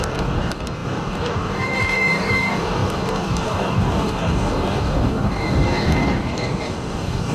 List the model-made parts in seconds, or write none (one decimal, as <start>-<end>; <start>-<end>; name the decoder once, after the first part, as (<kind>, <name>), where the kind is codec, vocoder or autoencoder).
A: 0.0-7.3 (codec, DAC)